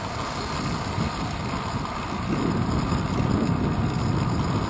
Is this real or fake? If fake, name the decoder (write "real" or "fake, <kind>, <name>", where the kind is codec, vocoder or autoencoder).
real